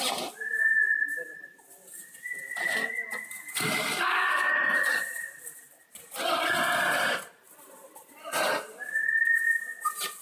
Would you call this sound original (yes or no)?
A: yes